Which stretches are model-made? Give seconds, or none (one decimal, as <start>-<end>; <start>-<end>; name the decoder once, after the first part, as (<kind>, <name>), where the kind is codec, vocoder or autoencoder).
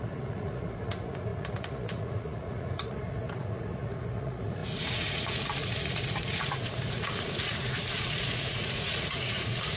0.0-9.8 (vocoder, Vocos)